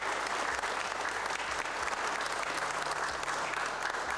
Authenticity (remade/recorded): recorded